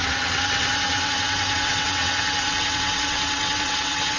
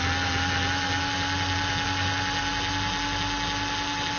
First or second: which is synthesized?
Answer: first